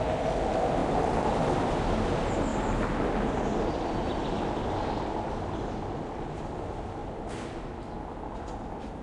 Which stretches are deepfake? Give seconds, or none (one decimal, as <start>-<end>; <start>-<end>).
none